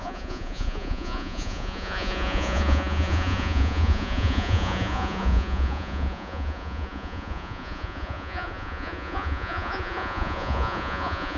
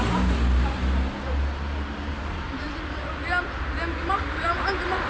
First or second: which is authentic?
second